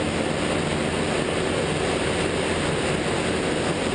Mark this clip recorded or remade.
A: recorded